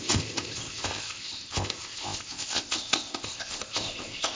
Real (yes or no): no